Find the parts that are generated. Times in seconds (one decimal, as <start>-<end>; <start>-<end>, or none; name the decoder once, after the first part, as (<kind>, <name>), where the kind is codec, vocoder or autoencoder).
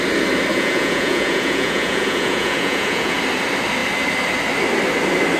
0.5-3.2 (vocoder, Vocos)